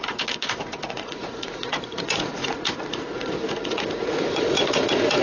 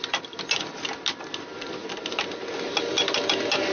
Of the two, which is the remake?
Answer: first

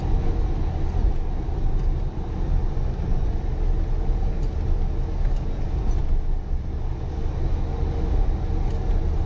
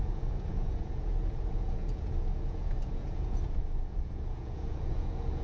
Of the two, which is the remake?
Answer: second